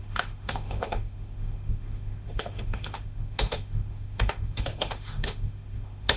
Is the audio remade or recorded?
remade